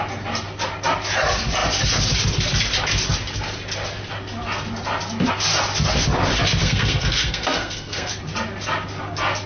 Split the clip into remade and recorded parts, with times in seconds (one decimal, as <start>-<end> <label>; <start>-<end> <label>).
0.0-6.6 recorded; 6.6-8.1 remade; 8.1-9.5 recorded